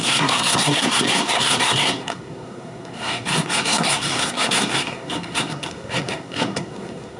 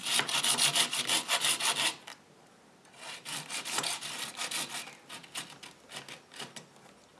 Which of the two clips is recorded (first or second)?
second